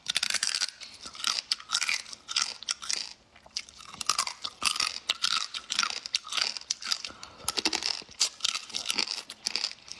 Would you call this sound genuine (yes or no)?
yes